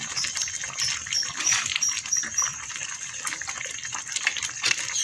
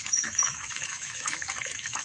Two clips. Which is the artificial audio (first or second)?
second